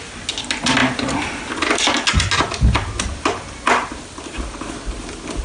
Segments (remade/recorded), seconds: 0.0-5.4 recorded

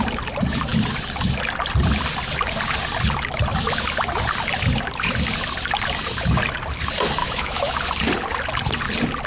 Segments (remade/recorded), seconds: 0.0-7.2 recorded; 7.2-7.8 remade; 7.8-9.3 recorded

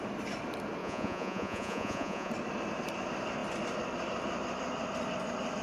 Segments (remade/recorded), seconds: 0.0-0.8 recorded; 0.8-2.3 remade; 2.3-5.6 recorded